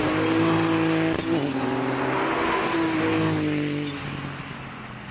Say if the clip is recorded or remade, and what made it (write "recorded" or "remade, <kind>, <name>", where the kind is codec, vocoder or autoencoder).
recorded